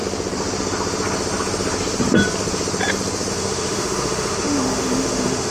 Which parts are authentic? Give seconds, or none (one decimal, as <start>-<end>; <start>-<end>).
0.0-3.3